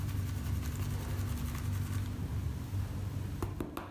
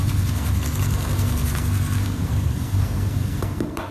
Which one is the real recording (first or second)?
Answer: first